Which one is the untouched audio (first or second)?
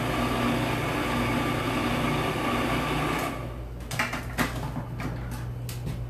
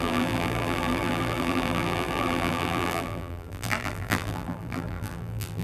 first